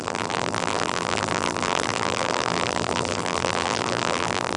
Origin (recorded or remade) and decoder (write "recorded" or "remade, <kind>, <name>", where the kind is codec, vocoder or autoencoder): remade, vocoder, BigVGAN v2